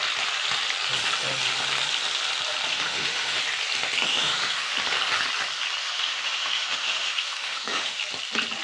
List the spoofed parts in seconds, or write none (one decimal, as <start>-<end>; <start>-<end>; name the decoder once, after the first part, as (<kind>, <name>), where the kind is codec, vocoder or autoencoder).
2.7-3.4 (autoencoder, DAC-VAE); 4.1-4.7; 5.8-8.0